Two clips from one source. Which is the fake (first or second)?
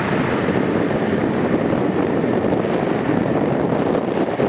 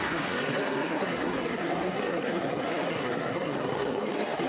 second